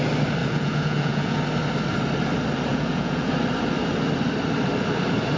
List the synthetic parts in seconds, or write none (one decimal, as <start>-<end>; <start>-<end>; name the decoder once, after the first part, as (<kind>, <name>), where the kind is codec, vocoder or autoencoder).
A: 0.4-1.4 (vocoder, Vocos); 2.7-3.3